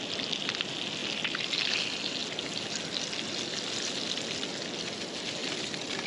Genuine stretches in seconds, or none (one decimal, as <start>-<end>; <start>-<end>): 0.0-6.1